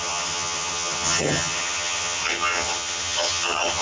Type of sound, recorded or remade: remade